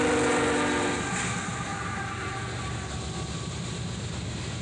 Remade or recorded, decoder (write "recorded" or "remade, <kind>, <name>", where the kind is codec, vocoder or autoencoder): recorded